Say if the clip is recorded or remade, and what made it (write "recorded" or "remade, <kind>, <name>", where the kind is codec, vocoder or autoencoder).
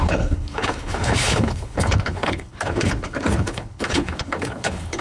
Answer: remade, codec, HILCodec